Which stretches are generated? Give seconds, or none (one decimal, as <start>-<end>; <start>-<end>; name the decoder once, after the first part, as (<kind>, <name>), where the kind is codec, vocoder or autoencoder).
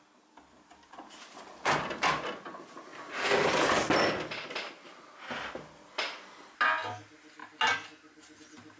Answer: none